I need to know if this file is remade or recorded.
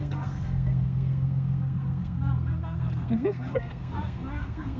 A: remade